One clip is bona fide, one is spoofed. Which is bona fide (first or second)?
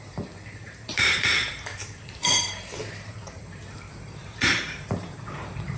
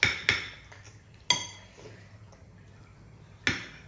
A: second